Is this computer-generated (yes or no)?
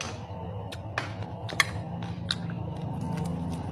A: no